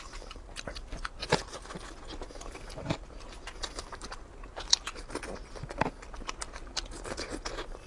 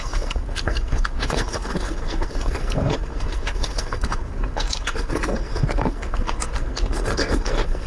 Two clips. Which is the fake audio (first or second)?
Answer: second